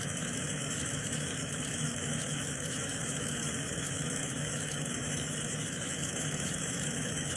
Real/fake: fake